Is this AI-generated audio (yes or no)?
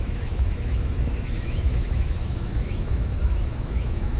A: yes